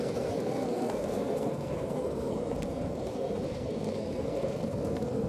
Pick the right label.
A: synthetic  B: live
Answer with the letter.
A